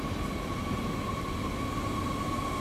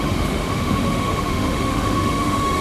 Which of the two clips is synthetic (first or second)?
second